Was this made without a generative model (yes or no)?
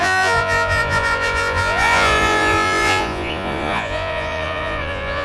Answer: no